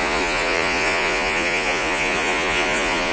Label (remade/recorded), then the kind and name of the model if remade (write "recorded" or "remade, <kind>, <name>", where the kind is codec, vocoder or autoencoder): remade, vocoder, Vocos